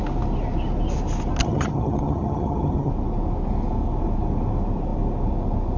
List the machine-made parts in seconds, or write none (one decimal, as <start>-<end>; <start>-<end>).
1.4-2.9